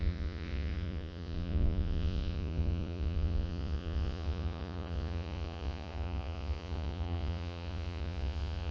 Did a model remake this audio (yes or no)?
yes